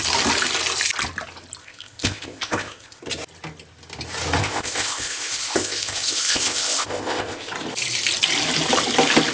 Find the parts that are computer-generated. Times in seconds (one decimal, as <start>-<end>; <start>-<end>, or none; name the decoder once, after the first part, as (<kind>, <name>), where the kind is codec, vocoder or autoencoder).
1.6-3.0 (codec, ZipCodec); 4.4-7.5